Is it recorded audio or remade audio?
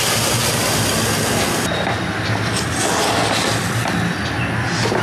recorded